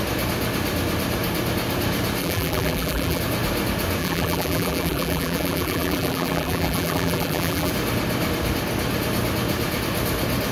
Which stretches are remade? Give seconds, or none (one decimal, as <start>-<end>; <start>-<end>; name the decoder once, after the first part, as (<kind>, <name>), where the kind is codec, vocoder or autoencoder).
2.2-3.2 (vocoder, BigVGAN v2); 4.0-7.7